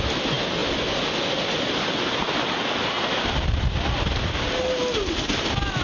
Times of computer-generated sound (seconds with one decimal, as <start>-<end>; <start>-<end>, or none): none